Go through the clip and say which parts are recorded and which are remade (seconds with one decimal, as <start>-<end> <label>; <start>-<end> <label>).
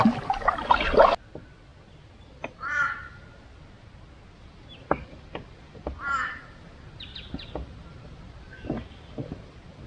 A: 0.0-9.9 recorded